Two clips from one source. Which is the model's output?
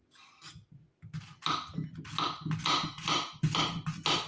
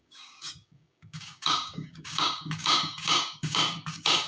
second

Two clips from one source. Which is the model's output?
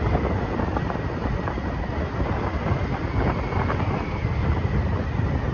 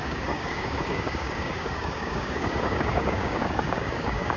second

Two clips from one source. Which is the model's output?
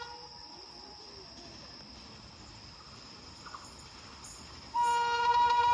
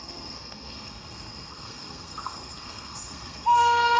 second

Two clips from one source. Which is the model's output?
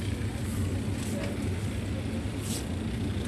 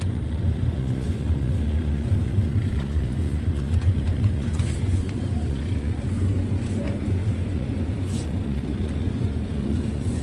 second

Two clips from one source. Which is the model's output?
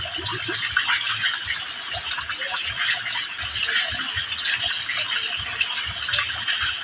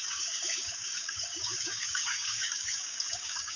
second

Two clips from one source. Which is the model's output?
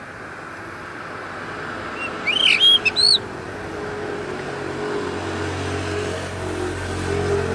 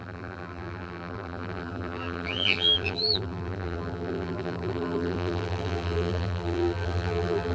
second